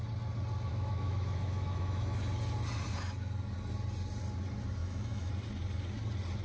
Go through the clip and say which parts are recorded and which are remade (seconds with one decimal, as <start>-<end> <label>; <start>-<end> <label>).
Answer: 0.0-0.7 recorded; 0.7-2.2 remade; 2.2-4.8 recorded; 4.8-5.3 remade; 5.3-6.4 recorded